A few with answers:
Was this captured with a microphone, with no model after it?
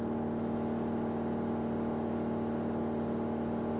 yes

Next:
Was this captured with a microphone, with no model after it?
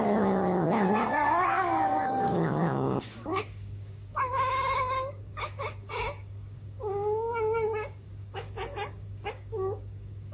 no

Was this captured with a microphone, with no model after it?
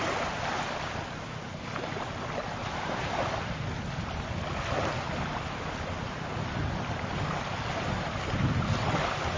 yes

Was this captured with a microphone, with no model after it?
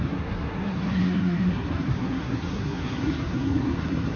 no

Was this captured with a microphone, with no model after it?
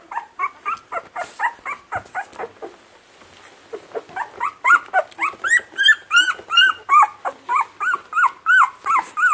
yes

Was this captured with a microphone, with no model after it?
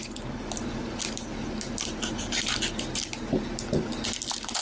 yes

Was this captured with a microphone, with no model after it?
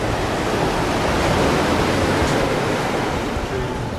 yes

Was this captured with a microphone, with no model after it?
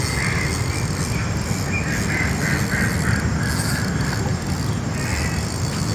yes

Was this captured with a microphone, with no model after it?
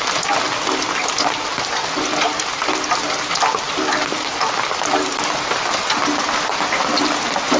yes